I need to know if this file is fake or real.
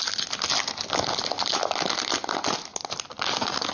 real